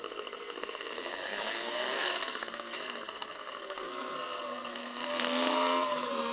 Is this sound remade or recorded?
remade